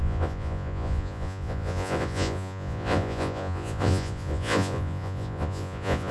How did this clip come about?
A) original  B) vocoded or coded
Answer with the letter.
B